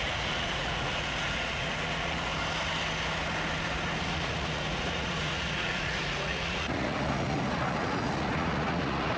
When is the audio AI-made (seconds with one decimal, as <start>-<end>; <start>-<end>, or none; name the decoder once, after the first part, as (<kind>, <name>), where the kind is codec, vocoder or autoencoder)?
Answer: 0.0-2.3 (vocoder, Vocos); 4.0-9.2